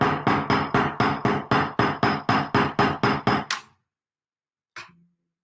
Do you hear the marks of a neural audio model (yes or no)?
no